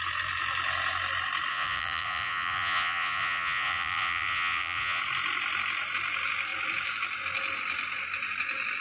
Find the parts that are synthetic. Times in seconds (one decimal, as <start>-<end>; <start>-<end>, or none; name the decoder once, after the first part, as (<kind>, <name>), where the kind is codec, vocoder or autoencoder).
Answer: 1.5-5.0 (vocoder, Vocos)

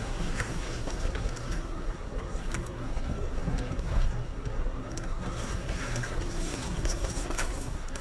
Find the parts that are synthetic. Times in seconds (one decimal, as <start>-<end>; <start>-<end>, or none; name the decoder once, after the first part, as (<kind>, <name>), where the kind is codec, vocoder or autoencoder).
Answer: 0.0-8.0 (codec, SNAC)

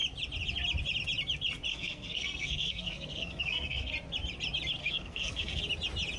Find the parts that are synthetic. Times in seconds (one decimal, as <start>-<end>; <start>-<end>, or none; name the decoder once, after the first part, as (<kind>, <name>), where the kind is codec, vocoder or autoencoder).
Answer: 1.7-3.9 (codec, SNAC); 4.8-5.6